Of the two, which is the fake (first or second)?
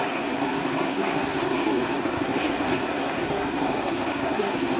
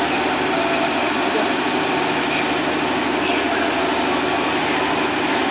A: first